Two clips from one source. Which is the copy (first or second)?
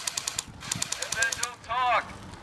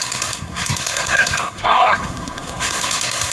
second